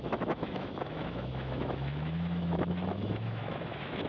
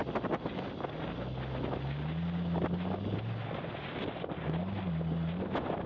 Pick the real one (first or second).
second